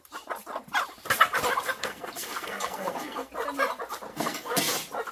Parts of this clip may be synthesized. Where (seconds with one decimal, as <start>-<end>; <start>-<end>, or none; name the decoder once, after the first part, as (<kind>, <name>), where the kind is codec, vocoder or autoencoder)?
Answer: 1.8-3.3 (codec, SNAC); 4.1-4.6

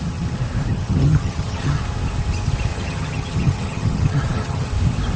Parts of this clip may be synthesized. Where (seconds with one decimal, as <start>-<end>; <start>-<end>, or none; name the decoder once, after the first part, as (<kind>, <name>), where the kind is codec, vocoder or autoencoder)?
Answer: 0.7-1.8 (vocoder, HiFi-GAN); 2.7-4.7

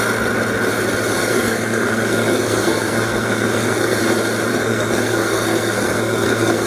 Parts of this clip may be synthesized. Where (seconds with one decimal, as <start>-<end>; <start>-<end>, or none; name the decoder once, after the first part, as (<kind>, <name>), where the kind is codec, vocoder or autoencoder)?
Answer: 1.2-4.0 (codec, SNAC); 4.5-6.7

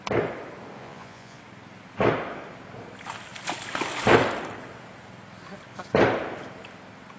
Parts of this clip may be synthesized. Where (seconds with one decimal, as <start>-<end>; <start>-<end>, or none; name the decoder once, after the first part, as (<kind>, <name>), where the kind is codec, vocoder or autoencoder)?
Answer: 0.8-1.4 (vocoder, Vocos)

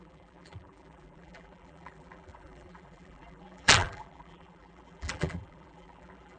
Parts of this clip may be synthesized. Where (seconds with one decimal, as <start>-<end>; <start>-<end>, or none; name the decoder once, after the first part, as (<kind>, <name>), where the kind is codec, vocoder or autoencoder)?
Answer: 0.0-6.4 (vocoder, BigVGAN v2)

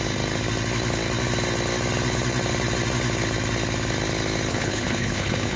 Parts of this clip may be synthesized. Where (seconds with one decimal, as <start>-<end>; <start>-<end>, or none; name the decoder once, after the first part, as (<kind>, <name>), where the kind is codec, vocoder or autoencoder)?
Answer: 4.5-5.6 (codec, HILCodec)